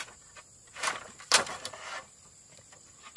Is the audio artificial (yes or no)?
no